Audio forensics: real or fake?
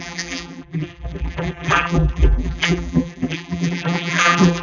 fake